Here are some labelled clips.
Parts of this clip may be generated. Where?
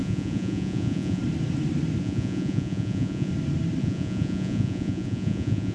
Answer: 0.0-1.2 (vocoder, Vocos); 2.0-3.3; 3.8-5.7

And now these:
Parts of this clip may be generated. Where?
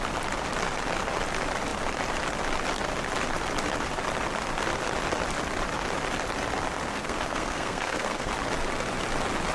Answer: 6.9-8.3 (codec, SNAC)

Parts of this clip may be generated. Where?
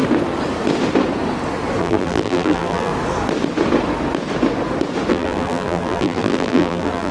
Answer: 1.8-2.9 (vocoder, BigVGAN v2); 5.1-7.1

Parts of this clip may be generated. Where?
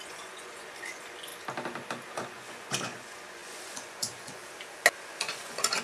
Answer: 0.0-1.3 (vocoder, Vocos); 2.1-4.4; 5.2-5.8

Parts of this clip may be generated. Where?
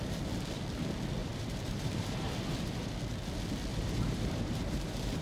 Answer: 1.2-2.3 (vocoder, BigVGAN v2); 3.7-5.2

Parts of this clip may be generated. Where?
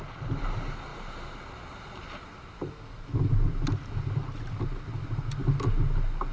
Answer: none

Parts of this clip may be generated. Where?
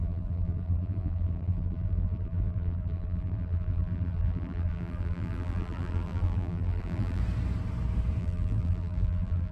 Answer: 0.0-7.2 (vocoder, BigVGAN v2); 8.2-9.5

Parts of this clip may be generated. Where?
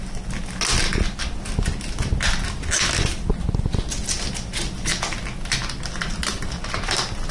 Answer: none